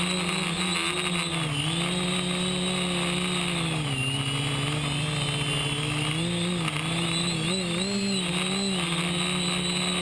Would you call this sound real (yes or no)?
yes